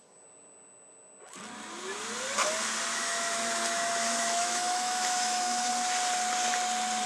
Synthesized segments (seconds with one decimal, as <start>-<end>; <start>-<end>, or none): 2.9-5.7